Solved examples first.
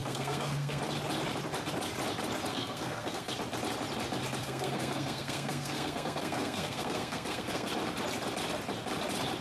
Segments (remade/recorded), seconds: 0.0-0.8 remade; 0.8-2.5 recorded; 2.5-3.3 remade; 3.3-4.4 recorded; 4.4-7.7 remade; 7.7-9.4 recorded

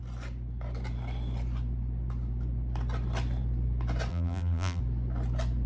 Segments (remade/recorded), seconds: 0.0-4.1 recorded; 4.1-4.8 remade; 4.8-5.7 recorded

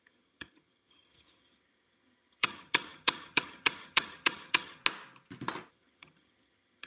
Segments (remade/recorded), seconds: 0.0-4.8 remade; 4.8-5.7 recorded; 5.7-6.9 remade

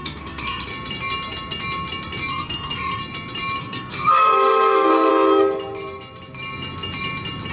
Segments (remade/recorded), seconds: 0.0-0.7 remade; 0.7-2.3 recorded; 2.3-3.0 remade; 3.0-3.6 recorded; 3.6-5.1 remade; 5.1-7.5 recorded

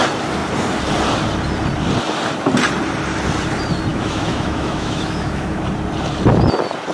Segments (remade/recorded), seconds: 0.0-3.9 recorded; 3.9-5.6 remade; 5.6-6.9 recorded

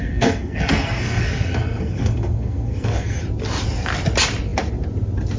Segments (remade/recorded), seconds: 0.0-3.2 remade; 3.2-5.4 recorded

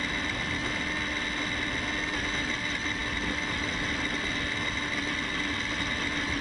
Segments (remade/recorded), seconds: 0.0-6.4 recorded

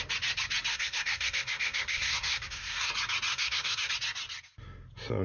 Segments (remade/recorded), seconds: 0.0-0.7 recorded; 0.7-2.9 remade; 2.9-3.3 recorded; 3.3-3.9 remade; 3.9-5.2 recorded